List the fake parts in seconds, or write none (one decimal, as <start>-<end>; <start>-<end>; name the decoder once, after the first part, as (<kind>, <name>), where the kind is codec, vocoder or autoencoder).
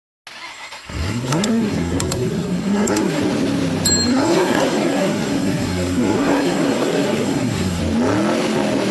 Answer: 0.5-3.2 (codec, SNAC); 4.1-7.8